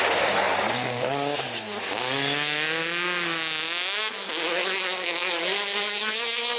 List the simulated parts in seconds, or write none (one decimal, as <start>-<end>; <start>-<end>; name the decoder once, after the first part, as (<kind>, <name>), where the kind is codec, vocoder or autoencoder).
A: 2.8-6.6 (autoencoder, DAC-VAE)